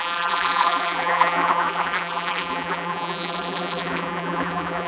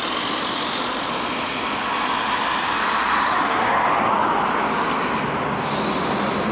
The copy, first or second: first